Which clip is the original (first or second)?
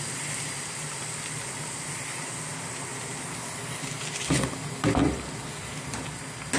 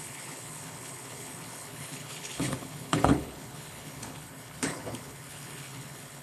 first